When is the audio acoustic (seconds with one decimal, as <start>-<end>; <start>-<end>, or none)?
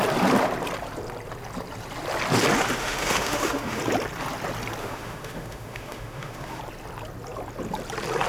0.0-2.8; 3.8-4.8; 6.6-8.3